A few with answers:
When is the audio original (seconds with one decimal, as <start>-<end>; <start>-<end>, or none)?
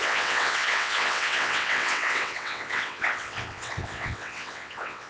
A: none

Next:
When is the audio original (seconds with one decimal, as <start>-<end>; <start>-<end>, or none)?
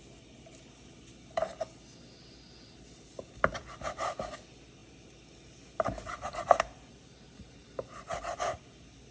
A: 0.0-9.1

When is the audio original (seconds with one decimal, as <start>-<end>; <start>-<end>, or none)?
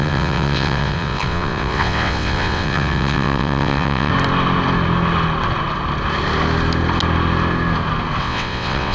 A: 4.1-8.2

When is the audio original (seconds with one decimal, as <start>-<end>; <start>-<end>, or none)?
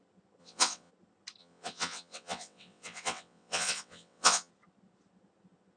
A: 0.0-0.4; 0.9-1.4; 4.5-5.8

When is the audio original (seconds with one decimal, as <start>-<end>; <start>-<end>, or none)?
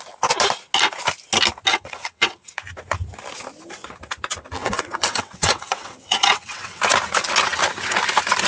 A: 0.0-1.7; 2.6-4.6; 6.8-8.5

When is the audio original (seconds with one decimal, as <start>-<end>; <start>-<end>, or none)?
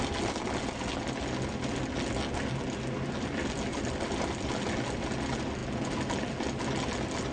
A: 0.0-7.3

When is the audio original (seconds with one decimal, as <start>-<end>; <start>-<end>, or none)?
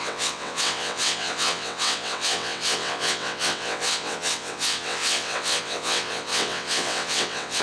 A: none